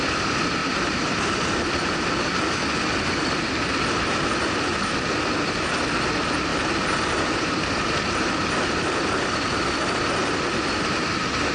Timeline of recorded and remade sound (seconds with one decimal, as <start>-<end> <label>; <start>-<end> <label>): 0.0-0.6 recorded; 0.6-1.2 remade; 1.2-6.5 recorded; 6.5-8.5 remade; 8.5-11.5 recorded